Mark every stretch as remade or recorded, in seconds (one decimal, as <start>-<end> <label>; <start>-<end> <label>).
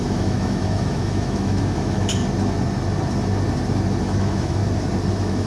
0.0-2.2 remade; 2.2-4.0 recorded; 4.0-4.6 remade; 4.6-5.1 recorded; 5.1-5.5 remade